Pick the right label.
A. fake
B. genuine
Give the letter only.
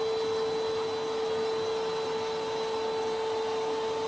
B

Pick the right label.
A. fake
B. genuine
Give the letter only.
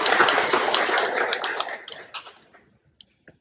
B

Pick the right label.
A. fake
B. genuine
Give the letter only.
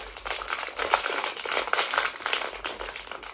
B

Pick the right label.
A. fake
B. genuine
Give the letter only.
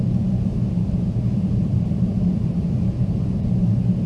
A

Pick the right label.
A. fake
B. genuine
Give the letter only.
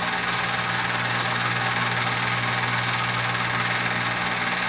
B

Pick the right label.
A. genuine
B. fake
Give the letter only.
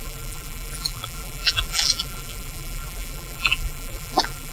B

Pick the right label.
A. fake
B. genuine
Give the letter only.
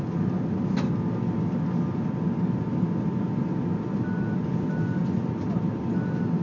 B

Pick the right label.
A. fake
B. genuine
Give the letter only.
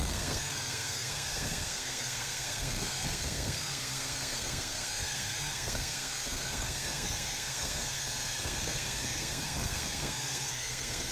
A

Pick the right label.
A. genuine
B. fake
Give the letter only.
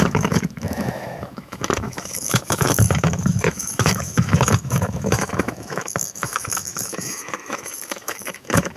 B